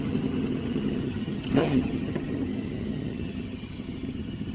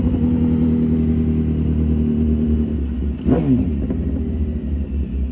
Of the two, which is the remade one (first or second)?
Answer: first